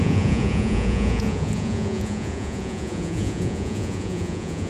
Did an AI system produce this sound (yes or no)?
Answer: yes